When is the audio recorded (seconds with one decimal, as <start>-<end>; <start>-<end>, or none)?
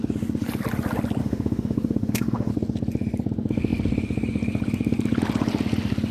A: 0.0-1.2; 2.5-6.1